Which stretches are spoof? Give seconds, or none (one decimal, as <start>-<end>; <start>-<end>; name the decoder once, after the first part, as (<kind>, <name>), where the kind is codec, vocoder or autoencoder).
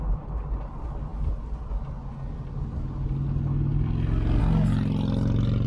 none